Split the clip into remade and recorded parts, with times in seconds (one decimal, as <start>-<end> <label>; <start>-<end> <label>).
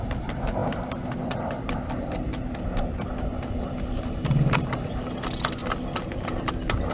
0.0-6.9 recorded